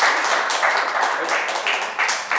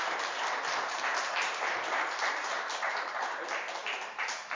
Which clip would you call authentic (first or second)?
first